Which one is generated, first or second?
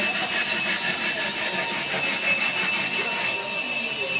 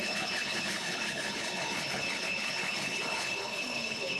second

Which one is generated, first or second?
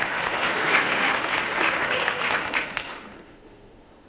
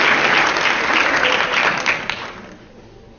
first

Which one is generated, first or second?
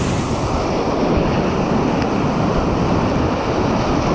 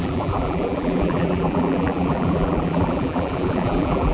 second